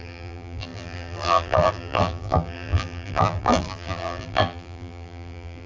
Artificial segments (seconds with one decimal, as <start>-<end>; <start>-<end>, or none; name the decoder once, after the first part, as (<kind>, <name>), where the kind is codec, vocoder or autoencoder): 0.0-5.7 (vocoder, BigVGAN v2)